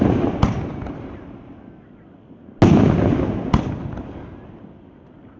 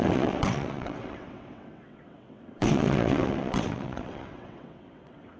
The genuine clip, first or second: first